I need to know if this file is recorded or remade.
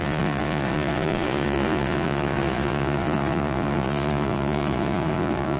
remade